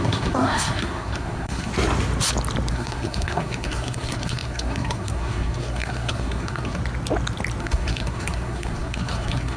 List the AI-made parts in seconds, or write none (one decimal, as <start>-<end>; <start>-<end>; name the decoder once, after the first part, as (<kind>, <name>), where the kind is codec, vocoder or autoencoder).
0.0-1.7 (codec, SNAC); 2.7-6.8; 7.6-9.6